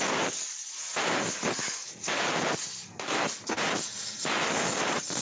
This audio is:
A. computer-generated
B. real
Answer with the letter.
B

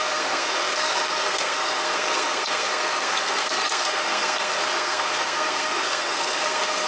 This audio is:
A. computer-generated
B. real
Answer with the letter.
A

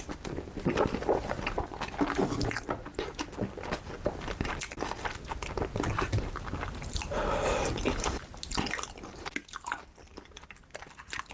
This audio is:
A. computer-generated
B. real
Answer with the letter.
B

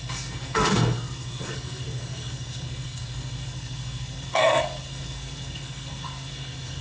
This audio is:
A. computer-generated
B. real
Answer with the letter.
A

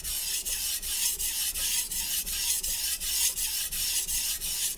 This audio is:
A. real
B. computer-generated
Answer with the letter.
A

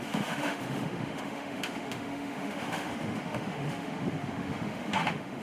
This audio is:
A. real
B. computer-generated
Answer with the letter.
B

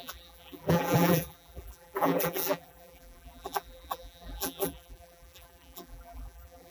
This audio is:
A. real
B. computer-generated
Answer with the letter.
B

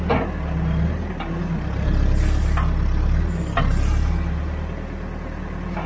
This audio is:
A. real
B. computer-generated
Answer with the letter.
A